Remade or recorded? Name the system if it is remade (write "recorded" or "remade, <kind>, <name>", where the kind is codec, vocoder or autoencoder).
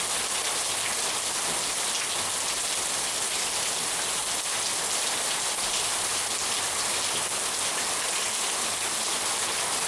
recorded